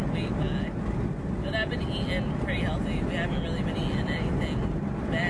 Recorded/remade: recorded